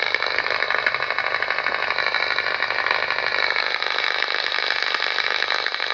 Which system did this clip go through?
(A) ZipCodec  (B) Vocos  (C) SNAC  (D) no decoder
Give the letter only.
D